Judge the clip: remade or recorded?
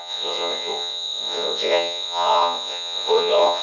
remade